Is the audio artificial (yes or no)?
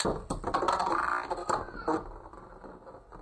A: no